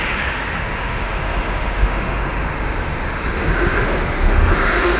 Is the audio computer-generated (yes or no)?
yes